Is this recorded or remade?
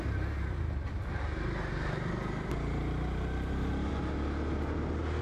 recorded